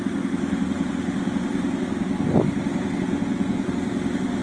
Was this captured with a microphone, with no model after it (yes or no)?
yes